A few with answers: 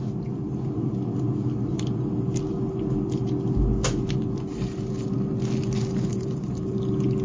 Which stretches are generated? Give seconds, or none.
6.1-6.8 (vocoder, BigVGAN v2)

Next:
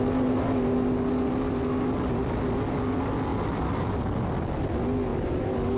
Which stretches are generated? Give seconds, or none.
3.3-3.9 (vocoder, BigVGAN v2); 5.1-5.8

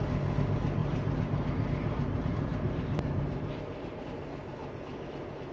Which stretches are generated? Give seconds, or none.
0.8-4.0 (vocoder, BigVGAN v2)

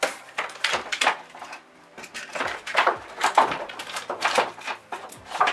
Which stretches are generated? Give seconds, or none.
1.4-4.7 (vocoder, BigVGAN v2)

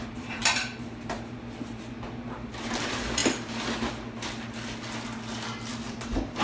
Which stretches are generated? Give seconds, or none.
0.0-3.2 (vocoder, BigVGAN v2); 5.9-6.4

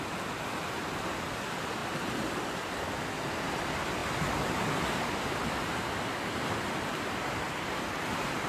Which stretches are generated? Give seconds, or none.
none

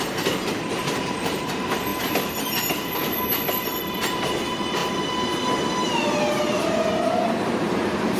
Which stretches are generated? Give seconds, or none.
0.0-1.9 (vocoder, BigVGAN v2); 3.5-4.8; 6.4-8.2